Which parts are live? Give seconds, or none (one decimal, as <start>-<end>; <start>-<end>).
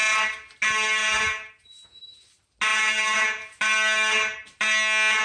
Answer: 0.0-1.0; 2.0-2.7; 3.6-5.2